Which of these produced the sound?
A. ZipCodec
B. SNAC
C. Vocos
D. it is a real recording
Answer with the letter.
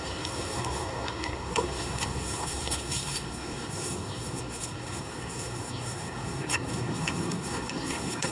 B